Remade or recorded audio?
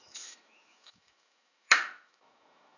remade